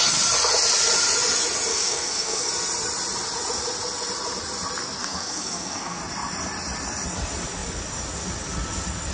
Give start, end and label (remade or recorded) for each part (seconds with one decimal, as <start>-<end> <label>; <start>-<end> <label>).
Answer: 0.0-1.7 recorded; 1.7-2.5 remade; 2.5-5.0 recorded; 5.0-6.0 remade; 6.0-9.1 recorded